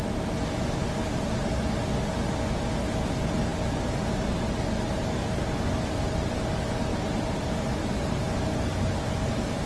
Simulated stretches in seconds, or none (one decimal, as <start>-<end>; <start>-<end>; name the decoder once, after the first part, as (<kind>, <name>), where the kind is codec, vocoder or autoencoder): none